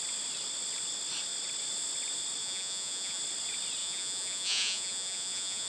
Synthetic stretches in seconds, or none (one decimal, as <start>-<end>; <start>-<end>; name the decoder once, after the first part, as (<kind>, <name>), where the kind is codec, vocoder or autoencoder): 2.4-3.2 (vocoder, Vocos); 3.8-5.7